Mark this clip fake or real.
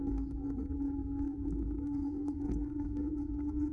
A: fake